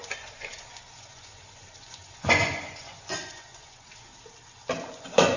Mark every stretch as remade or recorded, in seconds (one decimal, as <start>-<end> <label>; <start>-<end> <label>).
0.0-4.1 remade; 4.1-4.9 recorded; 4.9-5.4 remade